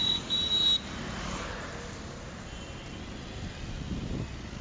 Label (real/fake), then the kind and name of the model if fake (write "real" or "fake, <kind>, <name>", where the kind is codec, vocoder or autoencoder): real